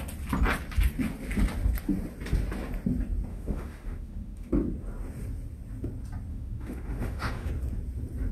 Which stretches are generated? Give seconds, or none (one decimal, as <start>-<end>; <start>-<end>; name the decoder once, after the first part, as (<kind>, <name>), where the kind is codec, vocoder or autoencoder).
3.3-4.5 (autoencoder, DAC-VAE); 6.3-7.5

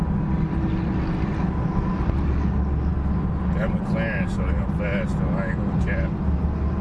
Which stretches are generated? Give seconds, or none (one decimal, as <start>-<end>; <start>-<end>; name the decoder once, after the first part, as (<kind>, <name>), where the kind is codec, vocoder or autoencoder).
none

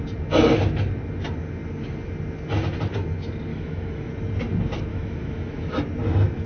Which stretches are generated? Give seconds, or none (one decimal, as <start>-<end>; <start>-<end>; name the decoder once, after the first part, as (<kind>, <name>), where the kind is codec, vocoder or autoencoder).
3.5-4.1 (autoencoder, DAC-VAE); 4.9-5.8

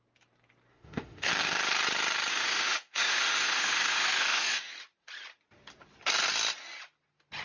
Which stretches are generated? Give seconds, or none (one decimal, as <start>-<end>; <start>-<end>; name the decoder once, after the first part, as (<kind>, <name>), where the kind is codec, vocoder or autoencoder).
0.7-1.3 (autoencoder, DAC-VAE); 2.3-4.7

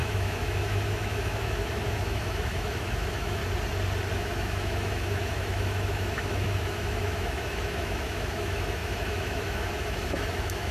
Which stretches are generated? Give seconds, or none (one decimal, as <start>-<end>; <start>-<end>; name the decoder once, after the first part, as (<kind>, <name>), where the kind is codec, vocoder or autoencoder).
0.0-3.4 (autoencoder, DAC-VAE); 4.1-10.7

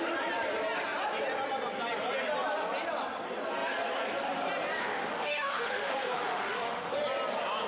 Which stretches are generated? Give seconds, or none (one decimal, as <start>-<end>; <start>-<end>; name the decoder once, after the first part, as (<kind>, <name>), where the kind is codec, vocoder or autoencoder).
4.8-7.0 (autoencoder, DAC-VAE)

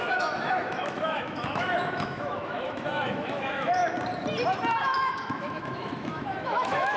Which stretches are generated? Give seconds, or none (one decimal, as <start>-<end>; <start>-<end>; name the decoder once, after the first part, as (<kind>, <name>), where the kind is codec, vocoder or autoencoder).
0.0-3.8 (autoencoder, DAC-VAE); 4.8-7.0